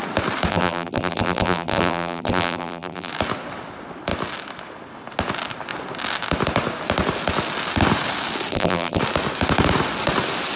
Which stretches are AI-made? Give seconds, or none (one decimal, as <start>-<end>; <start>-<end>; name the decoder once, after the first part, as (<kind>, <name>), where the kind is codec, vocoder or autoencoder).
0.5-3.1 (vocoder, BigVGAN v2); 8.5-9.0